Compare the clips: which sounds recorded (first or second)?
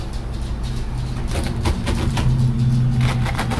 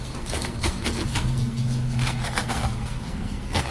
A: first